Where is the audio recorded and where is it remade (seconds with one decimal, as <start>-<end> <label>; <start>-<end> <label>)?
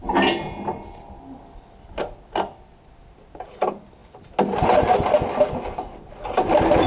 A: 0.0-6.9 recorded